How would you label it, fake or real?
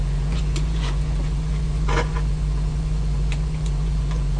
fake